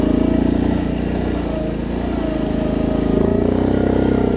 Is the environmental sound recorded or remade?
recorded